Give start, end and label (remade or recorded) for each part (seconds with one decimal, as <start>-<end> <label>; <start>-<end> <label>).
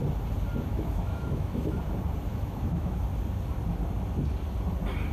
0.0-0.7 recorded; 0.7-1.8 remade; 1.8-2.3 recorded; 2.3-3.0 remade; 3.0-5.1 recorded